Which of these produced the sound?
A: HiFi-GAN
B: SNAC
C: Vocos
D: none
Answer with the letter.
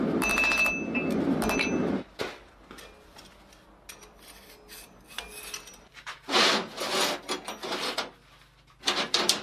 D